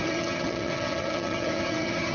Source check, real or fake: fake